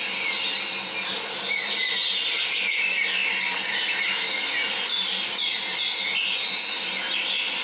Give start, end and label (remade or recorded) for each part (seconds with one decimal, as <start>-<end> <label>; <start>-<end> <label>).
0.0-7.6 recorded